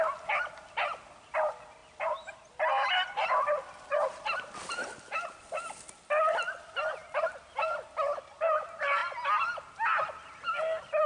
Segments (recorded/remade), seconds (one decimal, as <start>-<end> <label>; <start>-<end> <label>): 0.0-11.1 recorded